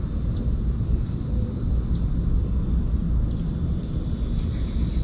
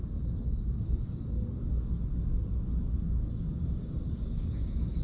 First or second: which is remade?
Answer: second